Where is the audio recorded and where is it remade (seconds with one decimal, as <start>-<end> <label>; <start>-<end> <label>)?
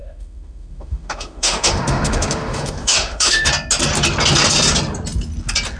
0.0-3.5 remade; 3.5-5.8 recorded